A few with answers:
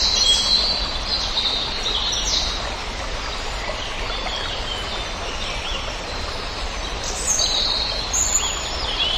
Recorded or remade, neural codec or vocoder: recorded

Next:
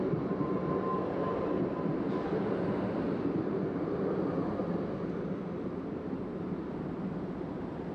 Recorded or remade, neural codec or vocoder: recorded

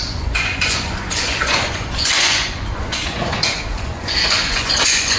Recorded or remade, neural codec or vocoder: remade, vocoder, Vocos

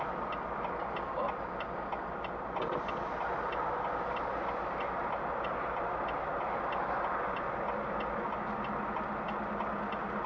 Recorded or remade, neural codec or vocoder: recorded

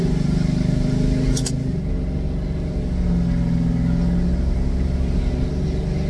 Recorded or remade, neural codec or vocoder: recorded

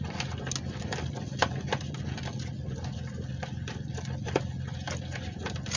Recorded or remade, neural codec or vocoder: recorded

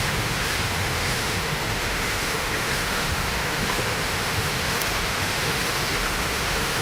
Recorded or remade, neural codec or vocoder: remade, autoencoder, DAC-VAE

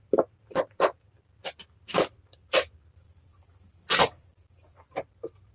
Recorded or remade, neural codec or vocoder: recorded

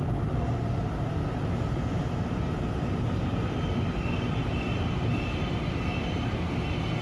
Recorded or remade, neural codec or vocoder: recorded